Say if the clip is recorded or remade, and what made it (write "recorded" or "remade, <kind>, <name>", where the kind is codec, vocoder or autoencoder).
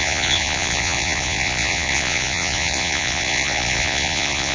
remade, vocoder, Vocos